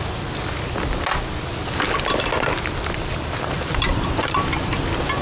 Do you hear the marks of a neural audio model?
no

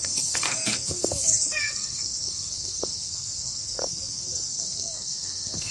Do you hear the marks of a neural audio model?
yes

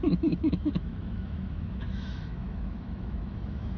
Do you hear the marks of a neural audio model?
yes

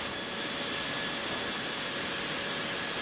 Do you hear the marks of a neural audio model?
no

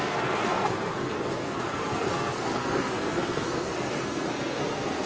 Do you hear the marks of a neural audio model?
yes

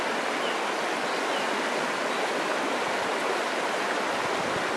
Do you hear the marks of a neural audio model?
no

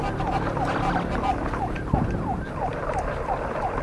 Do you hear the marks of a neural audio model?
no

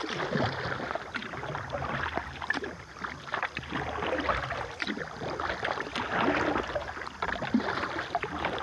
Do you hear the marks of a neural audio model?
no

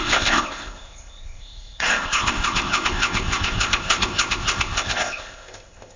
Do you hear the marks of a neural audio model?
yes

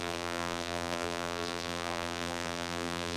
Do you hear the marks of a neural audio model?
yes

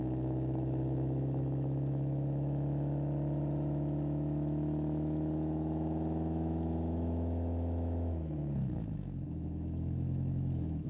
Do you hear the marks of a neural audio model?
yes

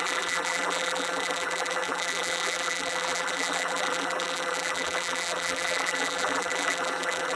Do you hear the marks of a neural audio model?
yes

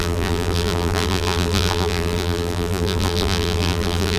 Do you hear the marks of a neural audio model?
yes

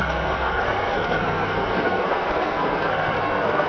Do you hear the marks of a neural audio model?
yes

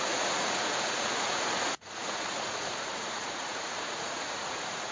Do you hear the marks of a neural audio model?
yes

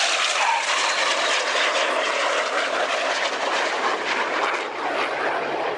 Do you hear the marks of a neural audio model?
no